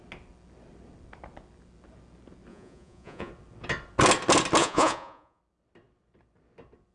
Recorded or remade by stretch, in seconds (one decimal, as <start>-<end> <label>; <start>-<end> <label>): 0.0-2.5 recorded; 2.5-3.3 remade; 3.3-4.6 recorded; 4.6-5.4 remade; 5.4-6.9 recorded

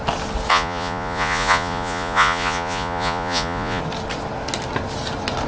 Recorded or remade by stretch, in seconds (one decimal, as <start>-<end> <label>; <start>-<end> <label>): 0.0-0.5 recorded; 0.5-3.8 remade; 3.8-5.5 recorded

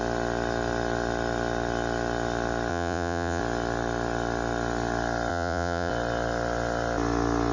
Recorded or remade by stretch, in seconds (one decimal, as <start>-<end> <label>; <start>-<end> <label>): 0.0-2.7 recorded; 2.7-3.4 remade; 3.4-5.3 recorded; 5.3-5.9 remade; 5.9-7.5 recorded